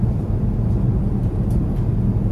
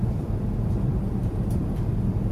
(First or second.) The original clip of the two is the first